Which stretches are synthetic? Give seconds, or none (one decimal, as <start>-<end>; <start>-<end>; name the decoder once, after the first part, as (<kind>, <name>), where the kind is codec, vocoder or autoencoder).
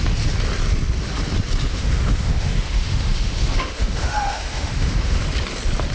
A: 1.7-5.2 (autoencoder, DAC-VAE)